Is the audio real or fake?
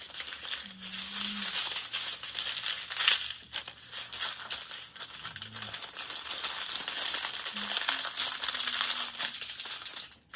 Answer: real